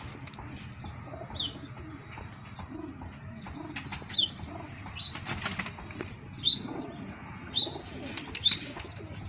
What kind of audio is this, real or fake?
real